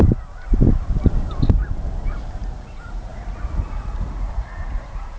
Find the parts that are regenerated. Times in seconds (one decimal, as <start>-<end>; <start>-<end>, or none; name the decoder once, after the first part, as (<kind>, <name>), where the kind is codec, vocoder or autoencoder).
2.4-5.2 (vocoder, Vocos)